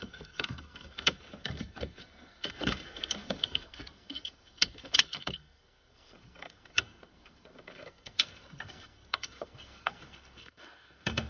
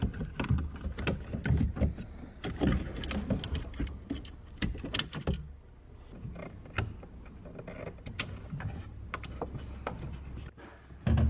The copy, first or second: first